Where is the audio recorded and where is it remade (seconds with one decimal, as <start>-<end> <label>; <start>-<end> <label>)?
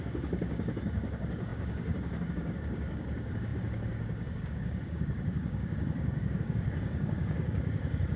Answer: 0.0-8.2 remade